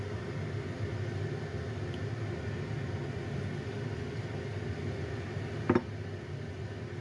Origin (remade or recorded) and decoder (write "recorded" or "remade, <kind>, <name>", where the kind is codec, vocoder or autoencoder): recorded